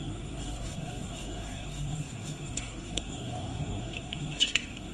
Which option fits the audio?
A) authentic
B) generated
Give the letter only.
B